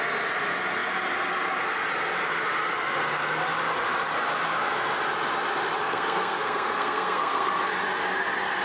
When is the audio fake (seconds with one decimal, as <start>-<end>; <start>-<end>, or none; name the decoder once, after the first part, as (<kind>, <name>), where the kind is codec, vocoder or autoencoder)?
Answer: 5.8-7.5 (codec, SNAC)